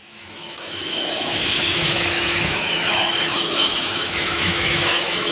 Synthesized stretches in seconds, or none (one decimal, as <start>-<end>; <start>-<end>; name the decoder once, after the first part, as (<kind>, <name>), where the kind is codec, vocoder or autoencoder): 0.0-5.3 (autoencoder, DAC-VAE)